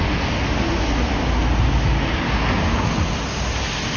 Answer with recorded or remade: recorded